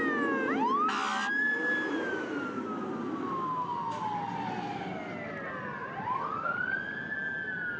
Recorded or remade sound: recorded